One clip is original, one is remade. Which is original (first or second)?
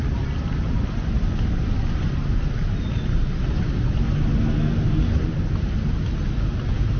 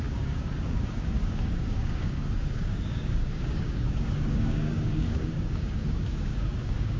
first